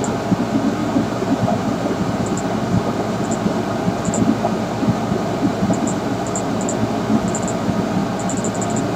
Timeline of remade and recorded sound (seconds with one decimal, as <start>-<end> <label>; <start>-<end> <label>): 0.0-0.8 recorded; 0.8-2.4 remade; 2.4-5.5 recorded; 5.5-6.6 remade; 6.6-9.0 recorded

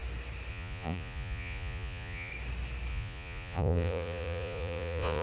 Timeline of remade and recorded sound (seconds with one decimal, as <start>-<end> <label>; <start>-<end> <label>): 0.0-0.5 recorded; 0.5-2.3 remade; 2.3-2.9 recorded; 2.9-5.2 remade

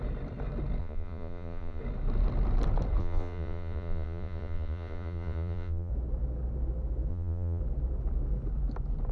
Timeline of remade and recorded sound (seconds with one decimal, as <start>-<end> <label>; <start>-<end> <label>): 0.0-0.8 recorded; 0.8-1.8 remade; 1.8-3.0 recorded; 3.0-5.9 remade; 5.9-7.1 recorded; 7.1-7.6 remade; 7.6-9.1 recorded

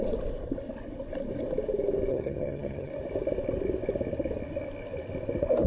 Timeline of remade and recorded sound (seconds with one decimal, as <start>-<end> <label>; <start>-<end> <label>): 0.0-2.1 recorded; 2.1-2.9 remade; 2.9-5.7 recorded

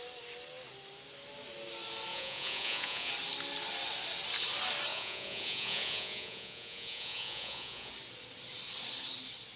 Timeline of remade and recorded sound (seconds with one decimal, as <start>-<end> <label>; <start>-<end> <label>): 0.0-2.1 recorded; 2.1-3.1 remade; 3.1-4.9 recorded; 4.9-7.9 remade; 7.9-9.6 recorded

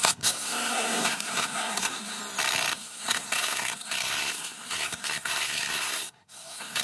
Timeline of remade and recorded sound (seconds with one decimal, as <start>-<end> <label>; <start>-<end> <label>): 0.0-2.2 remade; 2.2-2.7 recorded; 2.7-6.8 remade